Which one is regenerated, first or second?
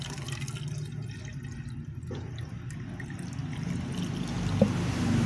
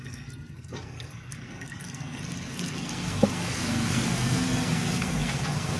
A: second